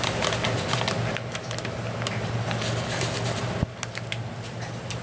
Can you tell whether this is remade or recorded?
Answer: recorded